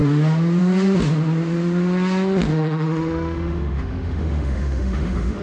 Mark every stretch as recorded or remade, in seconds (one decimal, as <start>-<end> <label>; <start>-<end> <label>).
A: 0.0-2.5 recorded; 2.5-5.4 remade

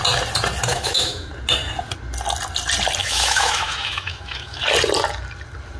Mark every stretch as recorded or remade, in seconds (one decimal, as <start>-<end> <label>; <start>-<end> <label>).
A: 0.0-0.7 recorded; 0.7-1.3 remade; 1.3-3.0 recorded; 3.0-4.6 remade; 4.6-5.8 recorded

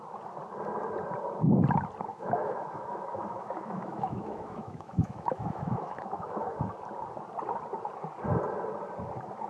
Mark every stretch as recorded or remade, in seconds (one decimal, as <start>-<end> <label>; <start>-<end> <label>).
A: 0.0-2.1 recorded; 2.1-6.6 remade; 6.6-9.5 recorded

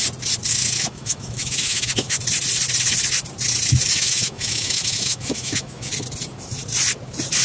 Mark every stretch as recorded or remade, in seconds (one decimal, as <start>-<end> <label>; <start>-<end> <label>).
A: 0.0-0.5 recorded; 0.5-2.2 remade; 2.2-3.9 recorded; 3.9-5.9 remade; 5.9-7.4 recorded

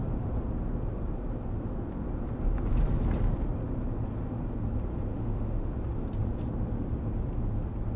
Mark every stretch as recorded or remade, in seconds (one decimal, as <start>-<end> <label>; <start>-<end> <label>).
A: 0.0-5.1 recorded; 5.1-5.7 remade; 5.7-8.0 recorded

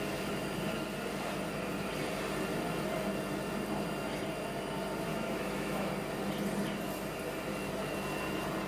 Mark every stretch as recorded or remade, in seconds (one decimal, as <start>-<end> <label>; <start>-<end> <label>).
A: 0.0-5.1 recorded; 5.1-5.9 remade; 5.9-8.7 recorded

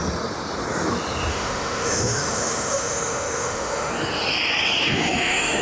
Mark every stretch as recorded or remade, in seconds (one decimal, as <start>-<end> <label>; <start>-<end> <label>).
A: 0.0-1.3 recorded; 1.3-3.9 remade; 3.9-4.8 recorded; 4.8-5.6 remade

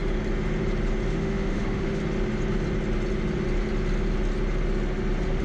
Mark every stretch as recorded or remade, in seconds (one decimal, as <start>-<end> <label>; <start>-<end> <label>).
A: 0.0-1.1 recorded; 1.1-2.0 remade; 2.0-5.4 recorded